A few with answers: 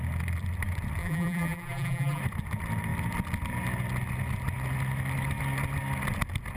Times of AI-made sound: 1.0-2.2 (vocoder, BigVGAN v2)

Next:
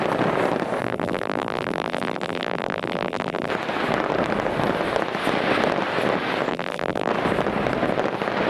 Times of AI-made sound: 0.8-3.5 (vocoder, BigVGAN v2); 6.5-7.1

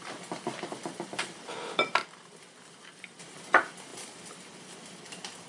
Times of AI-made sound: 0.0-3.9 (vocoder, BigVGAN v2)

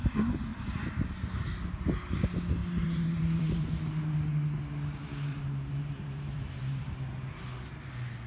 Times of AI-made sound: 2.6-3.7 (vocoder, BigVGAN v2); 5.3-7.3

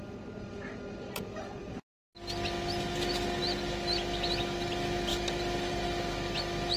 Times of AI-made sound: none

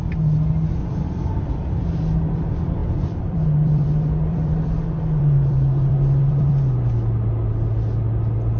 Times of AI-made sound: 0.8-1.4 (vocoder, BigVGAN v2); 2.8-6.5